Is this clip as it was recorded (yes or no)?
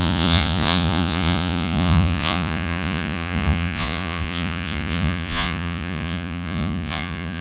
no